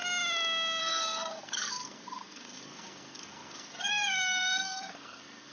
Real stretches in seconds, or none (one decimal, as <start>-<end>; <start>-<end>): 0.0-0.8